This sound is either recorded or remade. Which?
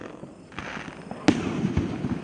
recorded